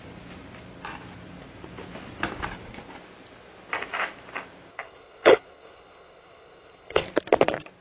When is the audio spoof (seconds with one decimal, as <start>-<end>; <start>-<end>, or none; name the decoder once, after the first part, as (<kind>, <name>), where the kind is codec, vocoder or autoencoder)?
4.7-7.0 (codec, HILCodec)